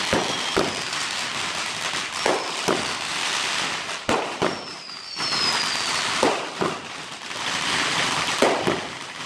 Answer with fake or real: real